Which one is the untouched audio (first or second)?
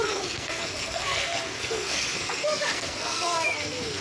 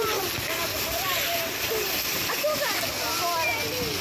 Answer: second